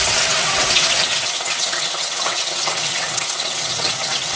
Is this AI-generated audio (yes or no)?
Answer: yes